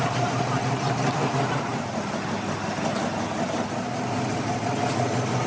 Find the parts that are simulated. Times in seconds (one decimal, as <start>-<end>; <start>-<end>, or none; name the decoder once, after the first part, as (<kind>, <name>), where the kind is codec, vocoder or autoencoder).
0.0-1.7 (vocoder, BigVGAN v2); 5.0-5.5